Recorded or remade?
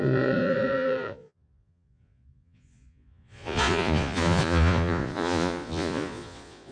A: remade